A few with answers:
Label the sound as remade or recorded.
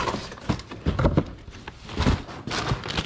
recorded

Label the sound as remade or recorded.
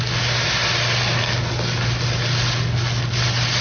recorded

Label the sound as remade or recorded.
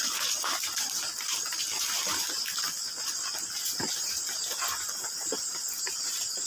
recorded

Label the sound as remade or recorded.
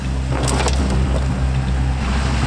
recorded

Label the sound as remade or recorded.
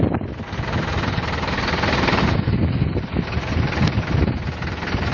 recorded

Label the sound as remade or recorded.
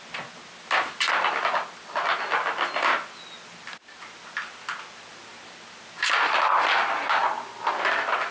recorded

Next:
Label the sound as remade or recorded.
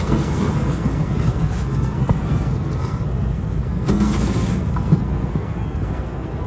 remade